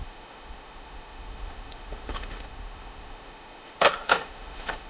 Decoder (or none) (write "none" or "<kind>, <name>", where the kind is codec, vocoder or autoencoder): autoencoder, DAC-VAE